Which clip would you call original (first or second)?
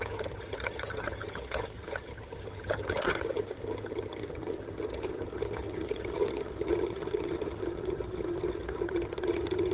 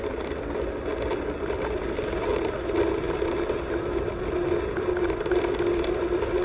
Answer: second